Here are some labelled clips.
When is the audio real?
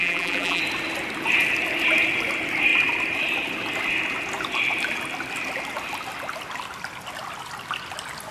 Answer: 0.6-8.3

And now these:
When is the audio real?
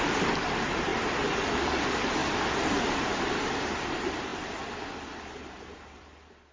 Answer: 0.9-1.4; 2.2-2.7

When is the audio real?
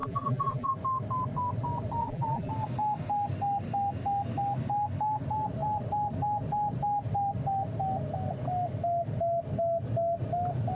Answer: 0.7-2.0; 2.5-10.7